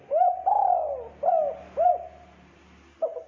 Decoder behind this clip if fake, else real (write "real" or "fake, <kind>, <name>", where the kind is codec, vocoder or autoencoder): real